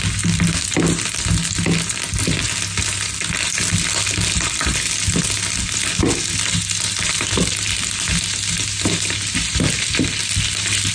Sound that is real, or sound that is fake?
real